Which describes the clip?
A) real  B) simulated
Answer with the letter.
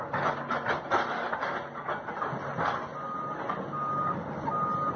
A